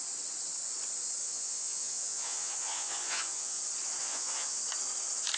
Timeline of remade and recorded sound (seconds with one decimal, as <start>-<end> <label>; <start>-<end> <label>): 0.0-1.2 recorded; 1.2-3.6 remade; 3.6-4.0 recorded; 4.0-4.6 remade; 4.6-5.4 recorded